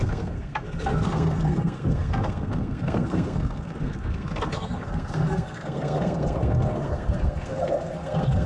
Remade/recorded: remade